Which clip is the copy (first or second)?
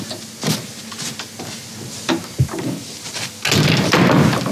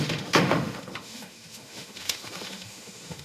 second